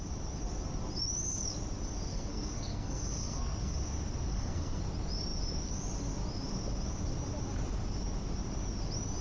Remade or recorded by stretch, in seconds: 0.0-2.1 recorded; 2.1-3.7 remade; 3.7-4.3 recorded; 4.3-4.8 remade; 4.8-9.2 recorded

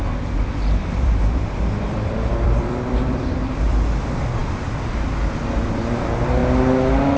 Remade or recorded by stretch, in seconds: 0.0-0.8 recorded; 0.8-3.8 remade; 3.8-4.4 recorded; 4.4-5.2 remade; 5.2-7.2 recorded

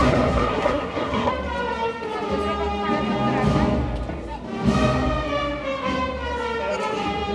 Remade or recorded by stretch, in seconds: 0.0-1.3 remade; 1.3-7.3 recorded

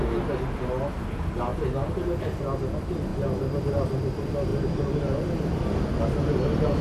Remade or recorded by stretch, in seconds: 0.0-4.5 recorded; 4.5-6.0 remade; 6.0-6.8 recorded